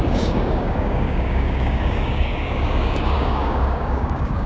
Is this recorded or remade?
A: remade